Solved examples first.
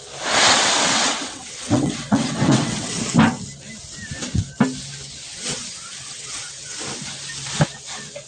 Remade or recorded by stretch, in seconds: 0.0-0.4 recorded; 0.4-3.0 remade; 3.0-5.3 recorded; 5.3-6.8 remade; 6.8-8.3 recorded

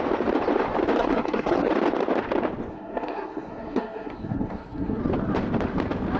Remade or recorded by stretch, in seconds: 0.0-1.0 recorded; 1.0-1.7 remade; 1.7-2.7 recorded; 2.7-5.0 remade; 5.0-6.2 recorded

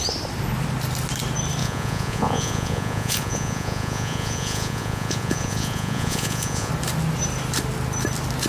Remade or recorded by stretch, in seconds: 0.0-1.6 recorded; 1.6-6.7 remade; 6.7-8.5 recorded

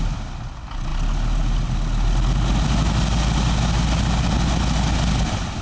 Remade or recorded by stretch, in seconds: 0.0-5.6 recorded

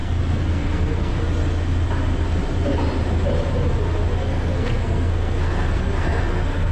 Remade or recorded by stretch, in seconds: 0.0-1.1 remade; 1.1-4.2 recorded; 4.2-6.7 remade

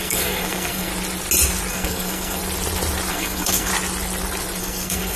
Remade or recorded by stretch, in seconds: 0.0-0.9 remade; 0.9-1.7 recorded; 1.7-2.4 remade; 2.4-3.1 recorded; 3.1-3.7 remade; 3.7-4.6 recorded; 4.6-5.2 remade